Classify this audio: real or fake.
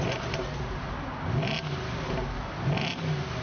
real